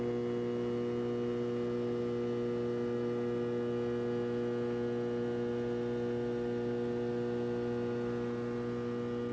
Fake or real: real